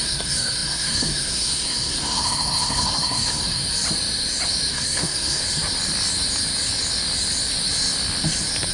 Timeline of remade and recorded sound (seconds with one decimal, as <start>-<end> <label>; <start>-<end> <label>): 0.0-3.6 remade; 3.6-4.7 recorded; 4.7-5.4 remade; 5.4-8.7 recorded